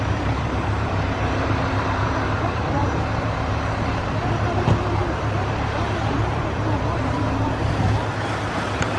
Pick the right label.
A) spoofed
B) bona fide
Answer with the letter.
A